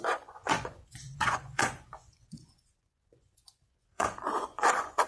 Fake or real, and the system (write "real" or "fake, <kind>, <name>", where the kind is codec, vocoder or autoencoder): fake, vocoder, Vocos